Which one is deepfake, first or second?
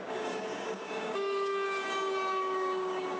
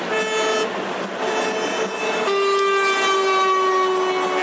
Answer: first